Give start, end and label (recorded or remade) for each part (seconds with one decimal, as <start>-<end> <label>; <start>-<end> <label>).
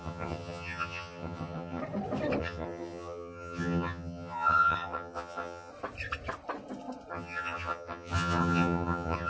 0.0-1.8 remade; 1.8-2.4 recorded; 2.4-5.7 remade; 5.7-7.1 recorded; 7.1-9.3 remade